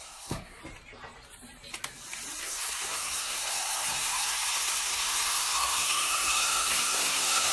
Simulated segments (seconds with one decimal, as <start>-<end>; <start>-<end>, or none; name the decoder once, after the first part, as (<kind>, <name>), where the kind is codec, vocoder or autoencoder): 0.0-0.6 (codec, SNAC); 2.4-7.5